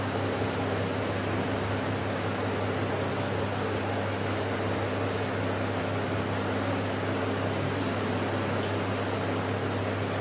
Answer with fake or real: real